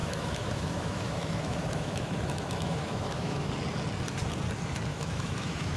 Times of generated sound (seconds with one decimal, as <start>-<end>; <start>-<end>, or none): 0.0-3.5; 4.9-5.8